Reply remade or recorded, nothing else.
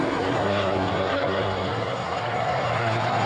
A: remade